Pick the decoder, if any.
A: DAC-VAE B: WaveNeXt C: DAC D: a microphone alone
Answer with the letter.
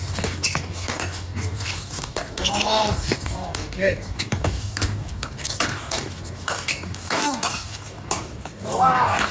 C